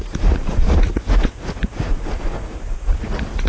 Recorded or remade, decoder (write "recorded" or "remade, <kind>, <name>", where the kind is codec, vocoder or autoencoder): remade, vocoder, Vocos